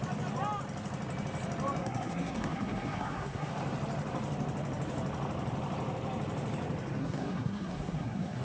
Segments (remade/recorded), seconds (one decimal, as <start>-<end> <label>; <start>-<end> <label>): 0.0-1.8 recorded; 1.8-3.5 remade; 3.5-7.0 recorded; 7.0-8.4 remade